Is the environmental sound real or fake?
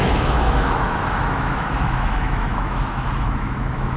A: fake